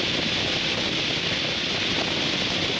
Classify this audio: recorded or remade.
recorded